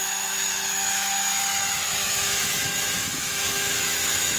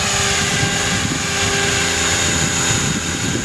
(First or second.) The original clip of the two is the second